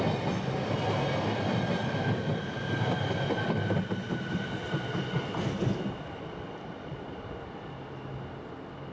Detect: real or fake real